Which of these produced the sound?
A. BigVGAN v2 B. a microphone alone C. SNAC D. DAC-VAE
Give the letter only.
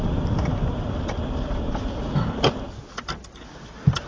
B